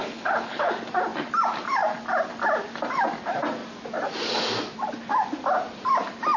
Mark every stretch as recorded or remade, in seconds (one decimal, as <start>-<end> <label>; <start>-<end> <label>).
0.0-0.7 remade; 0.7-6.4 recorded